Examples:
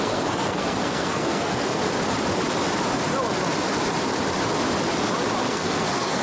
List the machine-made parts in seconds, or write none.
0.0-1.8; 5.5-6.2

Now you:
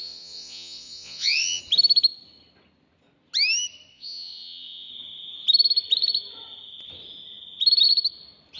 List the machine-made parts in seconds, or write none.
0.0-1.6; 3.9-4.9

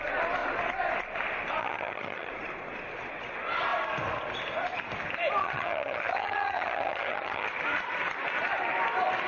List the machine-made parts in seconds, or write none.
1.6-2.3; 5.4-7.5

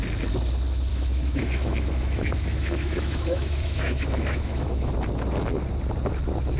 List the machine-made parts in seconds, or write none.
0.9-4.9

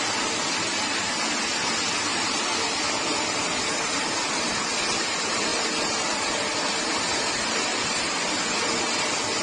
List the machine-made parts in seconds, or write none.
2.1-4.5; 5.5-8.7